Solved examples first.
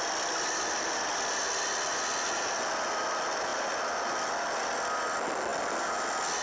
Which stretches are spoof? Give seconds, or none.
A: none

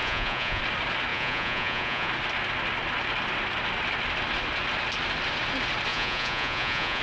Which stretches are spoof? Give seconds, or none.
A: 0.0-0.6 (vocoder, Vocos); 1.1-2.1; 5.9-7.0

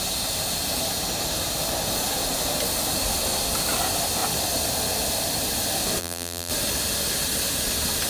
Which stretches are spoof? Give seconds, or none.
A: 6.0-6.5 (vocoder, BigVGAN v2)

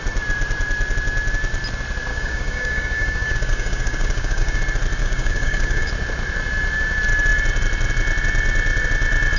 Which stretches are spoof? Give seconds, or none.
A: 2.1-4.6 (codec, DAC); 5.0-5.9

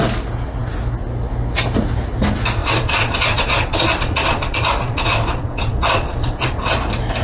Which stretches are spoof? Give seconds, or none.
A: 2.6-6.7 (vocoder, Vocos)

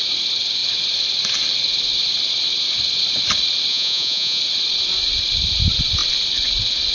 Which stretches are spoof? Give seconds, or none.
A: 3.7-4.4 (vocoder, Vocos)

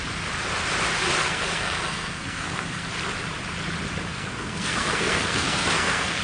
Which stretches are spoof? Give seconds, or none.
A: 1.2-2.9 (codec, SNAC); 4.1-6.2

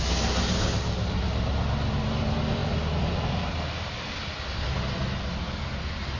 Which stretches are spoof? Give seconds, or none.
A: none